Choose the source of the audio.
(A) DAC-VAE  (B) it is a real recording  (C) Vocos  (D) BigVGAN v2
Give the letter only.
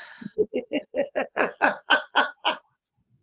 C